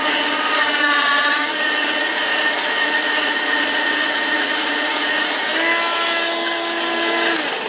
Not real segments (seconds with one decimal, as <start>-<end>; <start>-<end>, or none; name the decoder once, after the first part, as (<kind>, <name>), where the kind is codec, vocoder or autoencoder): 0.0-5.5 (vocoder, Vocos)